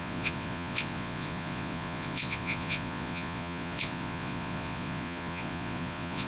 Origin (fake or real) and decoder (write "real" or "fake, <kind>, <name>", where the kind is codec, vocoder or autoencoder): fake, vocoder, Vocos